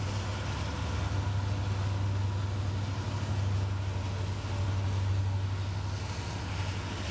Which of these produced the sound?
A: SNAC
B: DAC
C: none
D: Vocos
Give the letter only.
C